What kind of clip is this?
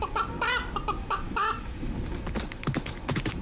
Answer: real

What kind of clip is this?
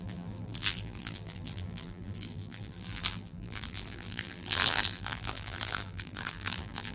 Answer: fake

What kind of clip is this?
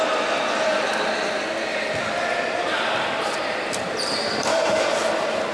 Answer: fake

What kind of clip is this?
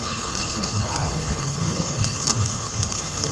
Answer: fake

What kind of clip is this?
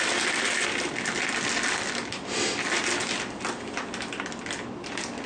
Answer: real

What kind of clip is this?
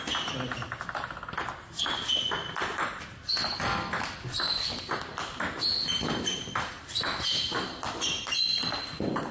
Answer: real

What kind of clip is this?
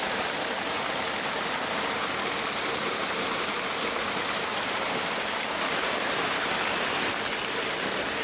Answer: real